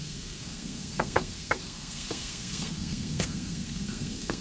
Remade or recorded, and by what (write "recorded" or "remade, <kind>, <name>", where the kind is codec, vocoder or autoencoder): remade, codec, SNAC